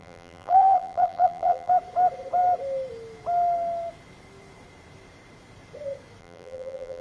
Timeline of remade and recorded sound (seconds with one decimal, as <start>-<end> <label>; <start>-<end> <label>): 0.0-1.7 remade; 1.7-6.2 recorded; 6.2-7.0 remade